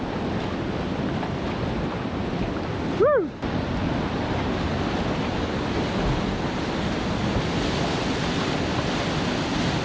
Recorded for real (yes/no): yes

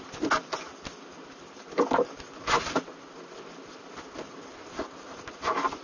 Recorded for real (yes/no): yes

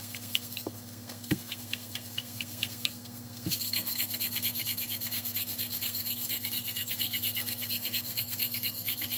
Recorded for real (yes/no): no